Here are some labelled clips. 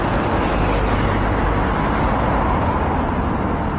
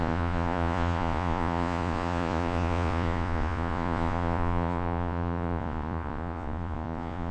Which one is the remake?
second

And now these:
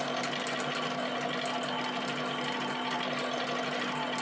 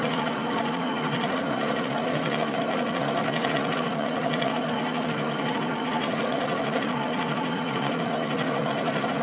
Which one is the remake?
second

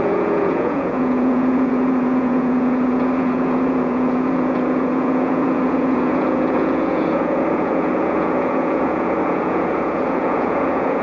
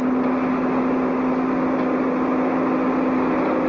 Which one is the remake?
first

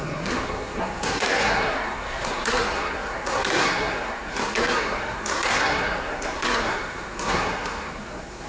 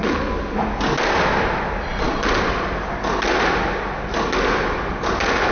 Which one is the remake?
first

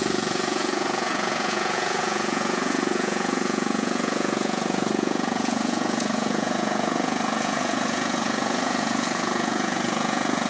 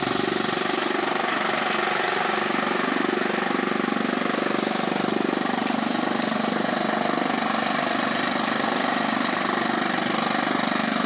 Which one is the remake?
first